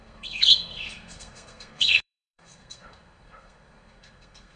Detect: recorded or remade remade